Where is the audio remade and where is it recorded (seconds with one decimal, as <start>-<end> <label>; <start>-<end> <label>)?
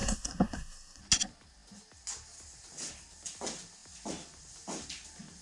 0.0-1.0 remade; 1.0-5.4 recorded